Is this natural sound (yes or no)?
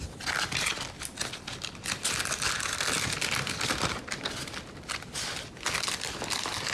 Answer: yes